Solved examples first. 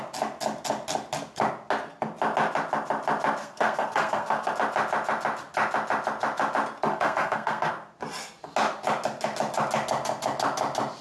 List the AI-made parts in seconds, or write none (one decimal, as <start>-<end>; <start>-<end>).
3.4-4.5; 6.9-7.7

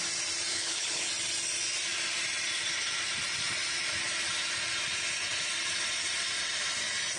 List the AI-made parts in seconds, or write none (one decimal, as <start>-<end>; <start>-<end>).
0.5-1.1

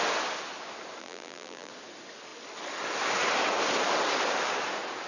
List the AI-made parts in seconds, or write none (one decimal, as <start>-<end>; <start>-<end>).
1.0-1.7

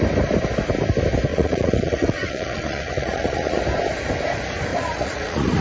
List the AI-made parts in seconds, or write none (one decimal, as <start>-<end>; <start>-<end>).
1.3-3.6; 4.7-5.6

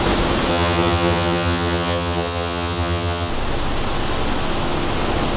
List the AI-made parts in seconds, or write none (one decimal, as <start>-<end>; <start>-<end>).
0.5-3.3